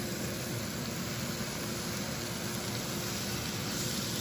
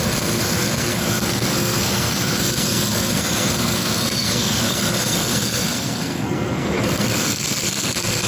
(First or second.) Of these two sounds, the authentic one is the first